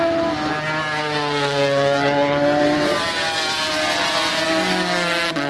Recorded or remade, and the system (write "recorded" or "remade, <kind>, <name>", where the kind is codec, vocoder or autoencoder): recorded